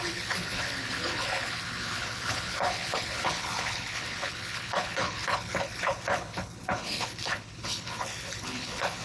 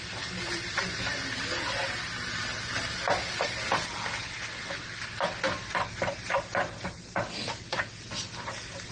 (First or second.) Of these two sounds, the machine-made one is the first